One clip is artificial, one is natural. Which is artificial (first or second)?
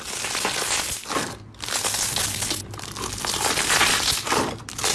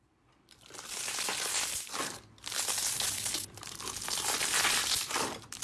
second